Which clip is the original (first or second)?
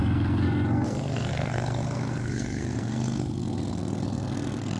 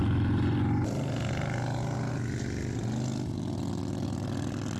second